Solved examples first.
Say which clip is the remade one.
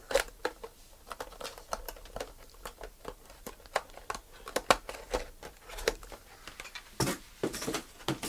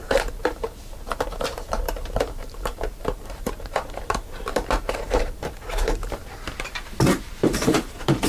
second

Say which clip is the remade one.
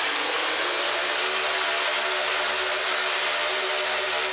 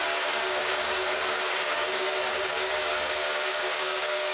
second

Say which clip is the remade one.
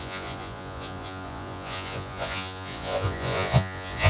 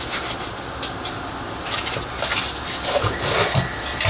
first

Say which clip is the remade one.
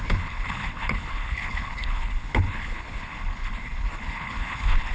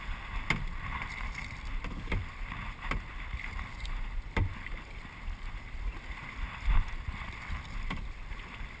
first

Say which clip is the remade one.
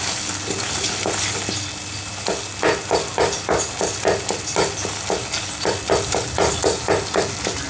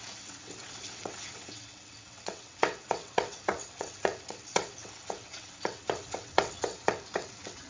second